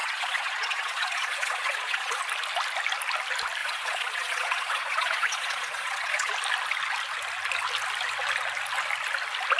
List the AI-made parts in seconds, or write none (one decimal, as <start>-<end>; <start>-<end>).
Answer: 0.0-2.2; 3.6-6.3